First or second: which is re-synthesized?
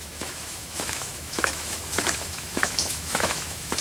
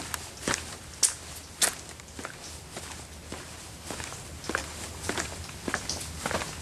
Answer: first